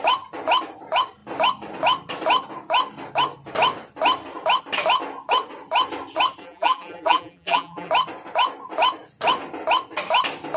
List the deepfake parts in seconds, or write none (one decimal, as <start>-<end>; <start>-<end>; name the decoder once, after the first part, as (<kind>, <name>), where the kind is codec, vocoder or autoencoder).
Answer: 6.4-7.9 (vocoder, BigVGAN v2)